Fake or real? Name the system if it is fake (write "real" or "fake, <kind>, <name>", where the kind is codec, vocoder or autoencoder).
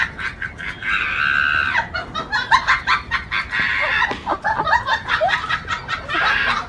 real